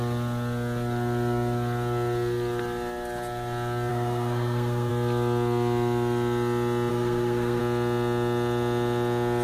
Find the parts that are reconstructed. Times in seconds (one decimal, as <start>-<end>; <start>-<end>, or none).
3.9-4.9; 6.9-7.6